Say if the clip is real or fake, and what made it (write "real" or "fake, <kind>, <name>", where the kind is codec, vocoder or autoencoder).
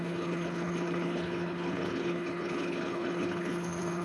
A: fake, codec, HILCodec